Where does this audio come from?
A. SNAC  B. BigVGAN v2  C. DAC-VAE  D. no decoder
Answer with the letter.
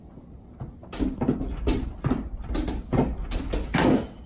D